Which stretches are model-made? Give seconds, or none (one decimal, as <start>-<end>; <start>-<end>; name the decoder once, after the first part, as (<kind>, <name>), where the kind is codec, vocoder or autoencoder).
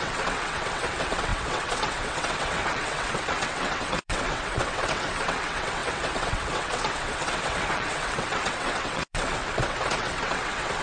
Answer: 0.0-10.8 (vocoder, WaveNeXt)